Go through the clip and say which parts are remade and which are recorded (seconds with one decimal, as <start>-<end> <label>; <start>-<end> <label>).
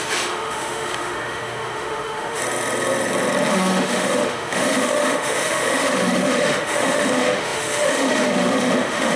0.0-2.4 remade; 2.4-3.5 recorded; 3.5-9.2 remade